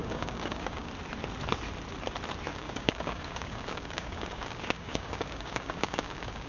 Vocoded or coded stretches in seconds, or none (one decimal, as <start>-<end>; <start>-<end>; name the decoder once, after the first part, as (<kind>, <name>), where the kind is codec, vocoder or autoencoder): 0.0-0.9 (codec, DAC); 2.5-6.5